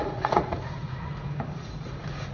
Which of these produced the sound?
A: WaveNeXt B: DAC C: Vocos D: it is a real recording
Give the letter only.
C